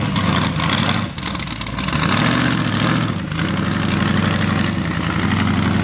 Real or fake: real